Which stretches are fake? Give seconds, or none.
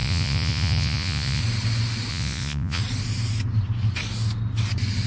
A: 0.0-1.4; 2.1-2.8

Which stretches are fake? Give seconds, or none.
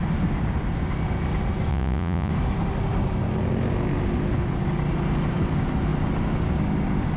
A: 1.7-2.3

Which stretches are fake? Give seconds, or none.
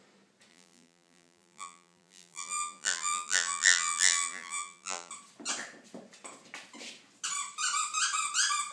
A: 0.5-5.1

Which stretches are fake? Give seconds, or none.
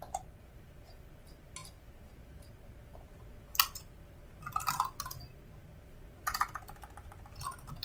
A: none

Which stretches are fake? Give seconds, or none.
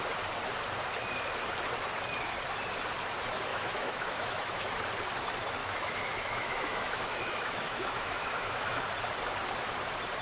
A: 3.5-4.7; 5.6-8.8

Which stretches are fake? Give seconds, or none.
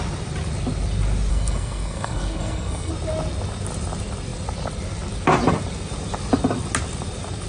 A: 1.3-2.9